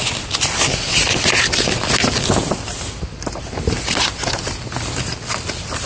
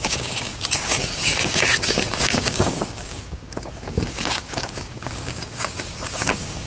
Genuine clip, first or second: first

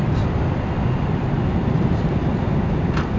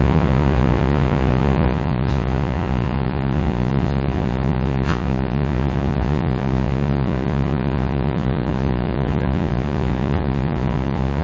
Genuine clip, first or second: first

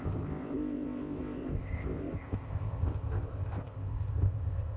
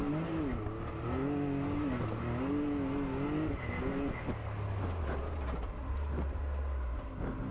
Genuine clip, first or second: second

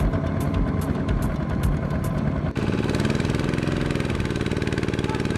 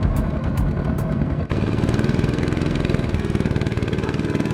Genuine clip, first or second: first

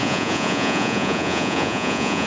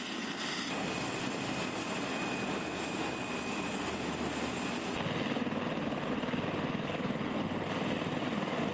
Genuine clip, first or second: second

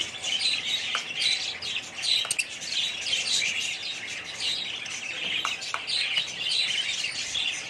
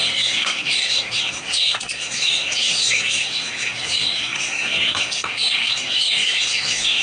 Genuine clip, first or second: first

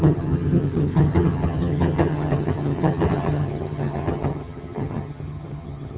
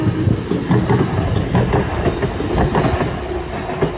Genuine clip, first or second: second